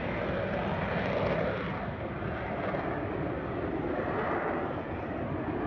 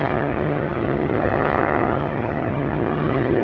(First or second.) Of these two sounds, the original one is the first